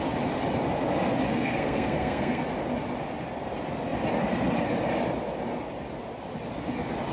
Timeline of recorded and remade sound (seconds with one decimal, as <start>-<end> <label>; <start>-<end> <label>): 0.0-1.3 recorded; 1.3-2.4 remade; 2.4-7.1 recorded